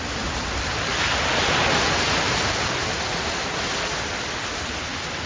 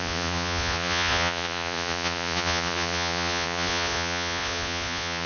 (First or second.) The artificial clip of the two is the second